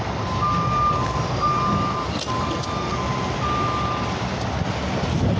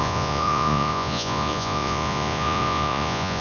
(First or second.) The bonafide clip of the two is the first